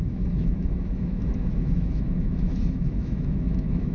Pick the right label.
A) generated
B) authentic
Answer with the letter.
A